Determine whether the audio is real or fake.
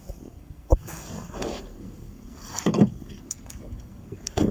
fake